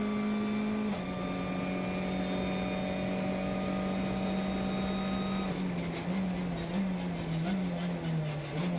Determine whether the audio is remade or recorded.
recorded